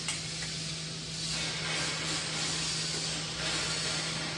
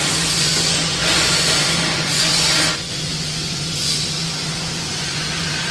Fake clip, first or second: second